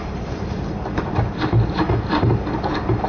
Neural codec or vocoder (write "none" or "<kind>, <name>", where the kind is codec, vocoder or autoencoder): vocoder, BigVGAN v2